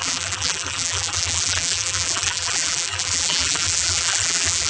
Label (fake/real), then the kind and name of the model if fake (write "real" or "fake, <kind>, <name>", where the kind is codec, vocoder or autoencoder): fake, vocoder, BigVGAN v2